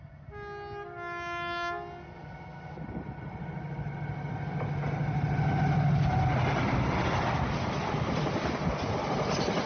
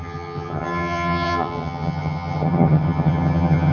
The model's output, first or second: second